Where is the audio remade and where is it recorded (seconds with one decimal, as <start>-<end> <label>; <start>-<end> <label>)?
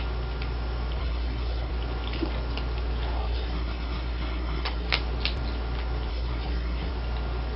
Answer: 0.0-1.0 recorded; 1.0-1.7 remade; 1.7-3.2 recorded; 3.2-4.9 remade; 4.9-6.1 recorded; 6.1-6.9 remade; 6.9-7.6 recorded